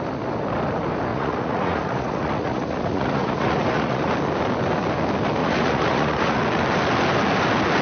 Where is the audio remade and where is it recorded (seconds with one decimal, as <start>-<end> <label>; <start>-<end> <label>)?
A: 0.0-1.1 recorded; 1.1-4.1 remade; 4.1-5.4 recorded; 5.4-6.4 remade; 6.4-7.8 recorded